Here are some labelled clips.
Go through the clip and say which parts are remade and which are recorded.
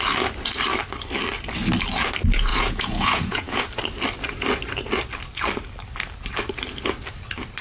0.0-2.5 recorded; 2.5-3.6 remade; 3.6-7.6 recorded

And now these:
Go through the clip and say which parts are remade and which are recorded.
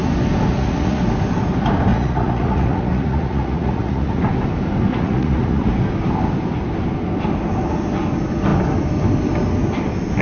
0.0-0.5 recorded; 0.5-1.0 remade; 1.0-1.9 recorded; 1.9-4.2 remade; 4.2-4.9 recorded; 4.9-5.7 remade; 5.7-10.2 recorded